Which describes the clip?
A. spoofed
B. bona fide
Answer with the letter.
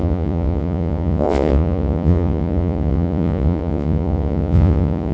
A